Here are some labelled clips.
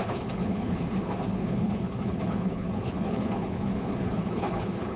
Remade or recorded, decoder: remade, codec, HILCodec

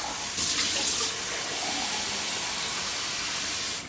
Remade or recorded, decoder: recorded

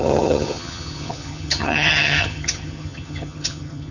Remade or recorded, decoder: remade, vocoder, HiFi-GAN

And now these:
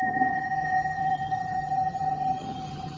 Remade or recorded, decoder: remade, vocoder, HiFi-GAN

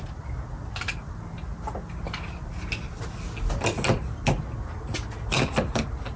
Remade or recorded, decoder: recorded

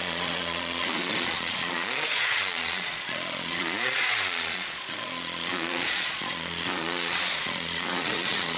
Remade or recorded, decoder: remade, vocoder, Vocos